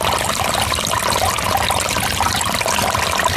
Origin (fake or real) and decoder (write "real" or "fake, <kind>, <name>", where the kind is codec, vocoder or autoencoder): real